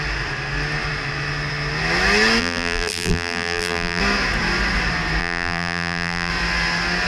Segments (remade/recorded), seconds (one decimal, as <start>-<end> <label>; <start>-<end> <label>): 0.0-2.4 recorded; 2.4-4.0 remade; 4.0-5.2 recorded; 5.2-6.3 remade; 6.3-7.1 recorded